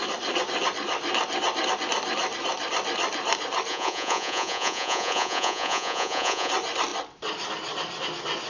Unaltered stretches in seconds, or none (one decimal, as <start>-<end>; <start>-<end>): 0.0-3.7; 6.5-8.5

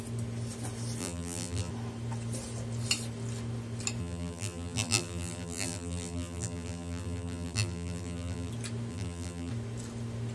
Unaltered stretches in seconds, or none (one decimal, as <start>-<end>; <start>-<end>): 0.0-1.0; 1.7-4.0; 8.5-8.9; 9.5-10.3